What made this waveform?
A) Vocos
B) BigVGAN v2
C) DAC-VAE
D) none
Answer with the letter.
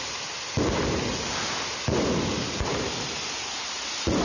D